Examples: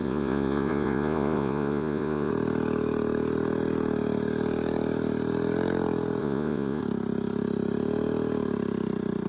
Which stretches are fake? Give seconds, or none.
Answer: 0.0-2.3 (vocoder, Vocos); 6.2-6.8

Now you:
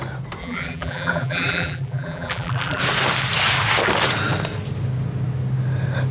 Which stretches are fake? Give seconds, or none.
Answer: 0.4-2.8 (vocoder, BigVGAN v2)

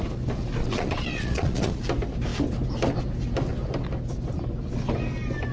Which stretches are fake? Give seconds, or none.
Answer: 0.6-1.8 (vocoder, Vocos)

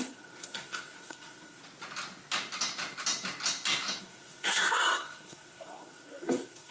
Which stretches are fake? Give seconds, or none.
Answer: 0.0-1.6 (codec, SNAC); 4.0-6.7

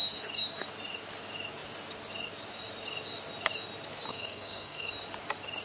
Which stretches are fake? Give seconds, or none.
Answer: 4.1-4.9 (codec, SNAC)